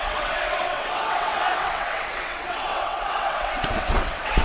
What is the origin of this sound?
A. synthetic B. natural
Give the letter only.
A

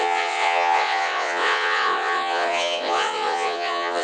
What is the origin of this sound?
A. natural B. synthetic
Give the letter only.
B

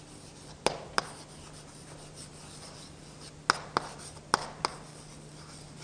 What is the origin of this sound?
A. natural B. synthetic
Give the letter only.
A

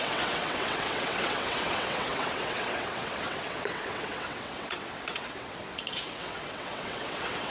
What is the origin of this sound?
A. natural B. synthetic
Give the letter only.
B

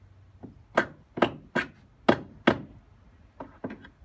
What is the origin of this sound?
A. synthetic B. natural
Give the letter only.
B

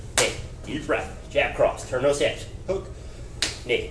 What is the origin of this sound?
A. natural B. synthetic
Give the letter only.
A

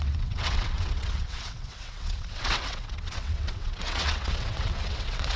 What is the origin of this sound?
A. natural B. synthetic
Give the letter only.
B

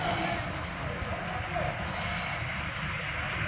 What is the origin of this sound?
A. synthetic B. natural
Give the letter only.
B